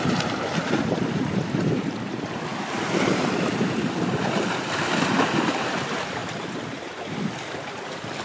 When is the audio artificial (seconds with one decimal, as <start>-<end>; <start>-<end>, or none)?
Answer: none